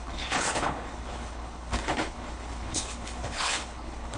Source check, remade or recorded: remade